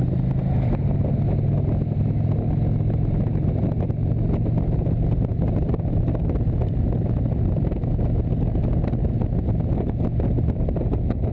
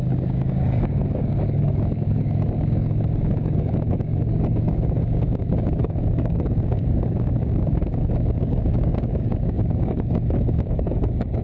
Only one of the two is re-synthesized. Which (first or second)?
second